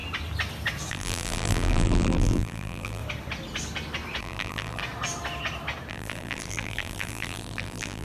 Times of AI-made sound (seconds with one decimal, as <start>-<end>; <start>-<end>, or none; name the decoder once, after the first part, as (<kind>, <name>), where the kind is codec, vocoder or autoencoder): 0.9-3.0 (vocoder, BigVGAN v2); 4.2-4.8; 5.9-8.0